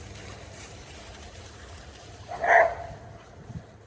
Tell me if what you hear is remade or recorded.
recorded